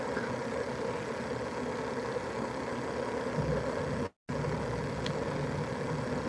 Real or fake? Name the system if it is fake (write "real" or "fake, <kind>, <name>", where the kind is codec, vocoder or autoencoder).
real